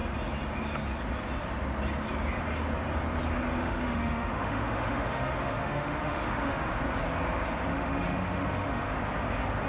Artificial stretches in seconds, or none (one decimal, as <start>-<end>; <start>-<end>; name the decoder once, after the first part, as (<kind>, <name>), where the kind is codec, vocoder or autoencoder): 3.6-6.7 (autoencoder, DAC-VAE); 7.7-9.0